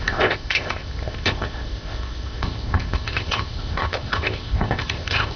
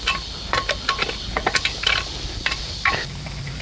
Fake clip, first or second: first